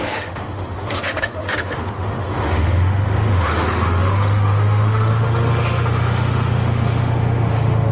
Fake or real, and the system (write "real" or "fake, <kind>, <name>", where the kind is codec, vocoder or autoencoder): fake, autoencoder, DAC-VAE